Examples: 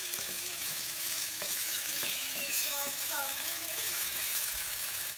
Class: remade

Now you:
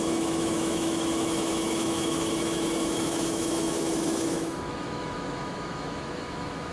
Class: remade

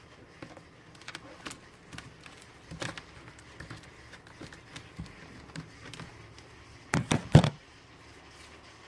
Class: recorded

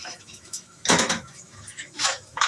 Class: remade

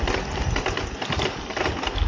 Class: recorded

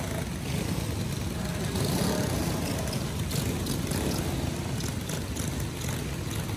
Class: recorded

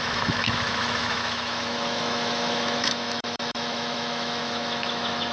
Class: remade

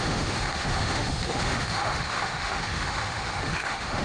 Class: remade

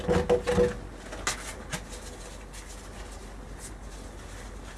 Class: recorded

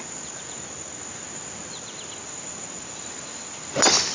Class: recorded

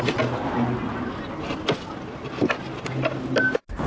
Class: recorded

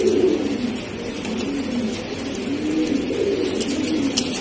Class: recorded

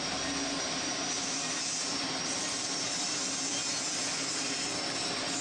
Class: recorded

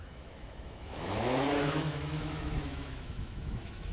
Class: remade